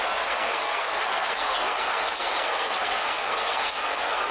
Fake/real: fake